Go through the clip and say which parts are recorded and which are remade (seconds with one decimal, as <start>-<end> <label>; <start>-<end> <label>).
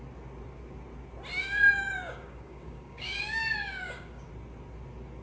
0.0-1.4 recorded; 1.4-4.3 remade; 4.3-5.2 recorded